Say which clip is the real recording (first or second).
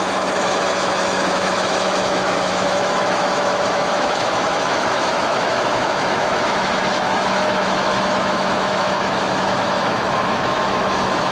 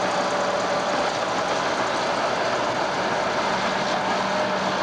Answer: second